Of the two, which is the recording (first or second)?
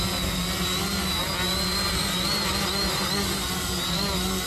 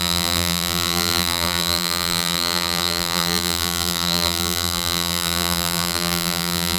first